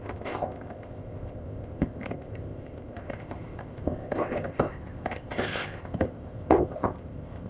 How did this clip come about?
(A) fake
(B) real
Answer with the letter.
A